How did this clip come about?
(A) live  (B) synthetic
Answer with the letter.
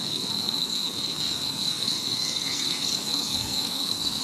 B